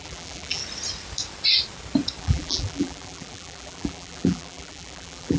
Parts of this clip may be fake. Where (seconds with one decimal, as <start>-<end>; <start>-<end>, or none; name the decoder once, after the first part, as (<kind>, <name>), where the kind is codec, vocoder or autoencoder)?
0.0-0.6 (vocoder, BigVGAN v2); 2.2-5.4